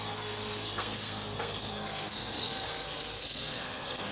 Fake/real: fake